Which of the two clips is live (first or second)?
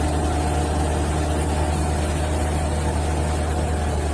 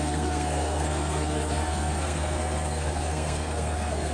first